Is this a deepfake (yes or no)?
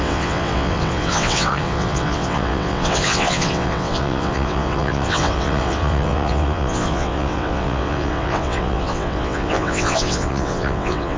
yes